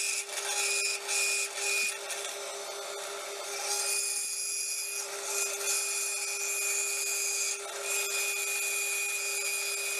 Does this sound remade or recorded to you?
recorded